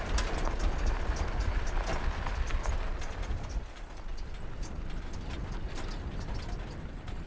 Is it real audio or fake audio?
real